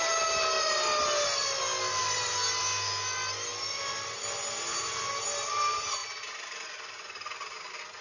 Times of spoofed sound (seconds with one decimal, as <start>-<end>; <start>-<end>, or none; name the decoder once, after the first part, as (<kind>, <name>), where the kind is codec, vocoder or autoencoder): none